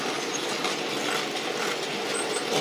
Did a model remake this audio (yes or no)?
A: no